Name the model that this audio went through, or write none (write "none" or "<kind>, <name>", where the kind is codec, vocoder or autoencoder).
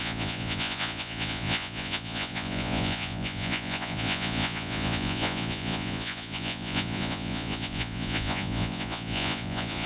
vocoder, Vocos